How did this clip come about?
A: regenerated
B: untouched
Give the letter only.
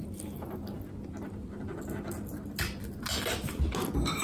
B